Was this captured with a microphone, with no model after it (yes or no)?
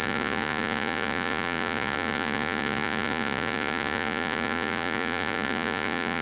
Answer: no